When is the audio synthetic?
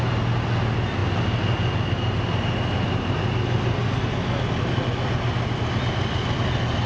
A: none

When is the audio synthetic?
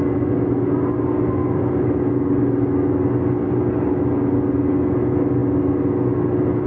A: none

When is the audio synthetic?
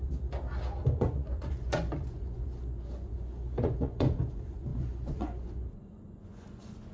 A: 0.8-6.9 (vocoder, Vocos)